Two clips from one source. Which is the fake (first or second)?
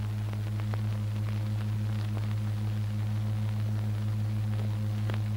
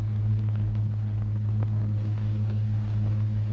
second